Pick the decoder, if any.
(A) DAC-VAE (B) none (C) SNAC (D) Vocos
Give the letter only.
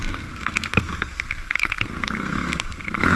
C